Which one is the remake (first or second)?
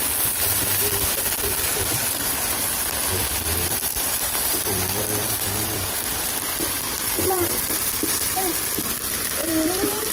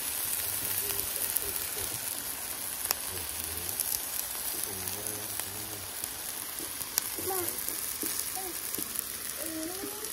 first